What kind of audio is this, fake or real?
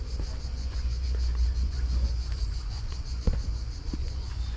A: fake